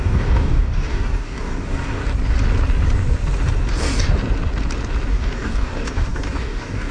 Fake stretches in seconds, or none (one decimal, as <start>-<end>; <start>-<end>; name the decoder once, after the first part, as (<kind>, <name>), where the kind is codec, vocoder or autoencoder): 0.0-2.0 (codec, DAC); 5.1-6.9